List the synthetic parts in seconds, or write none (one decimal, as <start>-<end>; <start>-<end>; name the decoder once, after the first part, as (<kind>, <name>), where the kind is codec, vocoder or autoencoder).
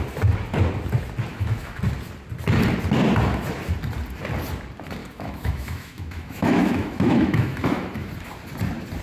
1.3-1.8 (autoencoder, DAC-VAE); 5.0-8.1